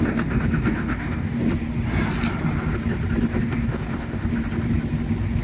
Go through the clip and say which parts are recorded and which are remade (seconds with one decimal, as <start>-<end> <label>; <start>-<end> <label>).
0.0-1.4 remade; 1.4-3.4 recorded; 3.4-4.3 remade; 4.3-5.4 recorded

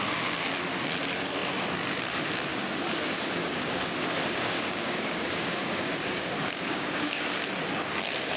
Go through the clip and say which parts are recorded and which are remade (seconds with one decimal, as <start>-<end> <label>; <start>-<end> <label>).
0.0-2.5 recorded; 2.5-7.4 remade; 7.4-8.4 recorded

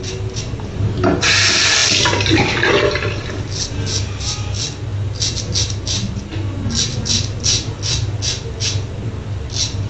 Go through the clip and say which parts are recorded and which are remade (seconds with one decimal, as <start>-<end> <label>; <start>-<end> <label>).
0.0-9.9 recorded

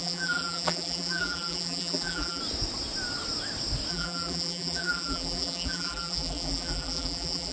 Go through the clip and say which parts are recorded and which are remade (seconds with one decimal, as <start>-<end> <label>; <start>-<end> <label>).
0.0-2.4 remade; 2.4-3.9 recorded; 3.9-7.5 remade

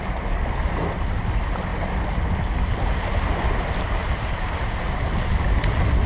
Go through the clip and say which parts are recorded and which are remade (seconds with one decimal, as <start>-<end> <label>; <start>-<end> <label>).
0.0-6.1 recorded

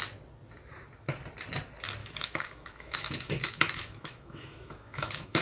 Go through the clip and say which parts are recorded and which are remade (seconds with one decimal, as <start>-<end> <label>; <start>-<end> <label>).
0.0-2.0 recorded; 2.0-5.4 remade